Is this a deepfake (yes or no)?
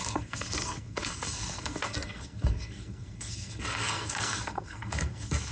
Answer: yes